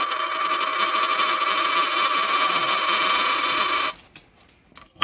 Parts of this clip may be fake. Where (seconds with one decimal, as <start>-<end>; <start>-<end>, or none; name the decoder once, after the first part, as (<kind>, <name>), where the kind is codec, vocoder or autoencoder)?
none

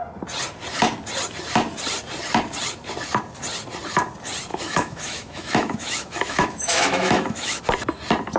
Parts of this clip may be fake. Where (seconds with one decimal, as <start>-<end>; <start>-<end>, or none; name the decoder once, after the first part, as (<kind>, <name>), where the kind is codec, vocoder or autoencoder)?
4.5-7.6 (autoencoder, DAC-VAE)

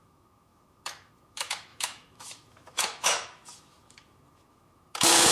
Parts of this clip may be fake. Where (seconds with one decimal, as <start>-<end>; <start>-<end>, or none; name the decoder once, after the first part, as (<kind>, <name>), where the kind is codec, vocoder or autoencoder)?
0.0-5.3 (autoencoder, DAC-VAE)

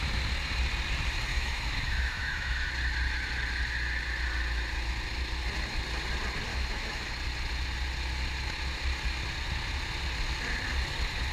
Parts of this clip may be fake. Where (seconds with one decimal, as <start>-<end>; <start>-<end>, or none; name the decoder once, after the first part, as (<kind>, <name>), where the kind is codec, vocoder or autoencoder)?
1.3-2.7 (autoencoder, DAC-VAE); 6.5-7.1

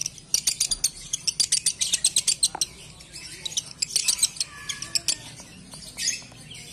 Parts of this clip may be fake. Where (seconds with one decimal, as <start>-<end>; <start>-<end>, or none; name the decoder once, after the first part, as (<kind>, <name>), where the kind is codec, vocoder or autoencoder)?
none

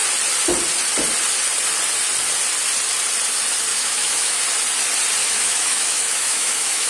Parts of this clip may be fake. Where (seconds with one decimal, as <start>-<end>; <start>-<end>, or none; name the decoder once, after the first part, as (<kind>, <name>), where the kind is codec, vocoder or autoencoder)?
3.7-4.4 (autoencoder, DAC-VAE); 5.2-6.9

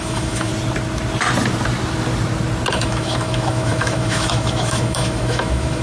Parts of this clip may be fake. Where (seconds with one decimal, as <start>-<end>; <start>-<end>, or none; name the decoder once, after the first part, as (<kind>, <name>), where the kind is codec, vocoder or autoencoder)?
0.0-0.5 (autoencoder, DAC-VAE); 2.7-5.8

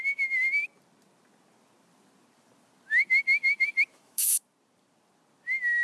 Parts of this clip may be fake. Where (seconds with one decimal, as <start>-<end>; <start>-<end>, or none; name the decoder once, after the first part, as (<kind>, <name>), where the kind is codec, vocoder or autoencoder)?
3.9-4.4 (autoencoder, DAC-VAE)